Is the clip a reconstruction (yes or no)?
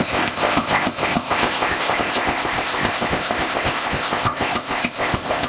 yes